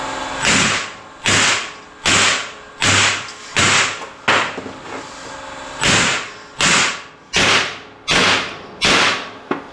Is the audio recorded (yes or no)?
yes